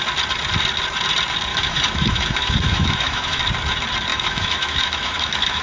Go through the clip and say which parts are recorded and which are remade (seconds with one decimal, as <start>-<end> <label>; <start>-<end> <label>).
0.0-1.5 recorded; 1.5-3.4 remade; 3.4-4.1 recorded; 4.1-5.6 remade